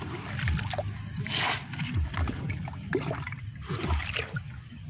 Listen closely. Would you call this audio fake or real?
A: real